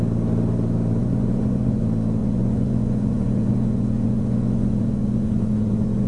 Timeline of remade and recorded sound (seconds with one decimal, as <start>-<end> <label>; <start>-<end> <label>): 0.0-1.0 recorded; 1.0-1.8 remade; 1.8-2.2 recorded; 2.2-6.1 remade